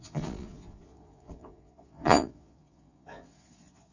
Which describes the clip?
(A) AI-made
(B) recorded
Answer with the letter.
A